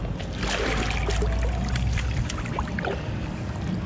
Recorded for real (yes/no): yes